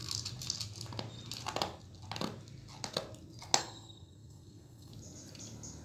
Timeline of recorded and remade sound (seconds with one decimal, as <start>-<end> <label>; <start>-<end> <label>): 0.0-3.6 recorded; 3.6-4.9 remade; 4.9-5.8 recorded